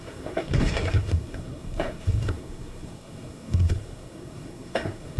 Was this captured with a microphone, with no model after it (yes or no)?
no